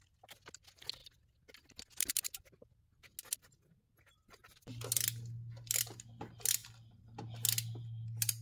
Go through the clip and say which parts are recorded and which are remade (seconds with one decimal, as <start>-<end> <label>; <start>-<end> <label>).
0.0-8.4 recorded